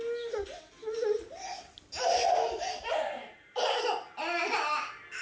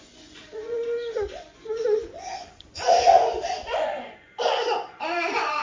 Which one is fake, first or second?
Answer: second